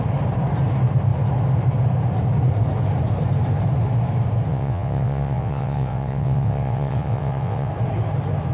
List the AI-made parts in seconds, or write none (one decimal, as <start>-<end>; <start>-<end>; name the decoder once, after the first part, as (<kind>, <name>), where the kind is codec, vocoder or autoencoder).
4.5-7.7 (vocoder, WaveNeXt)